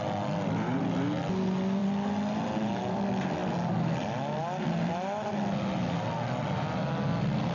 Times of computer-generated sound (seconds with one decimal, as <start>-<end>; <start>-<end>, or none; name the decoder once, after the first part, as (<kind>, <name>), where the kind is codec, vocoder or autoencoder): none